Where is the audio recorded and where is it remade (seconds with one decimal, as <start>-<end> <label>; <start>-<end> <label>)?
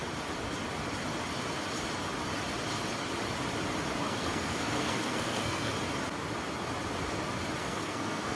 0.0-4.0 recorded; 4.0-5.7 remade; 5.7-7.6 recorded; 7.6-8.4 remade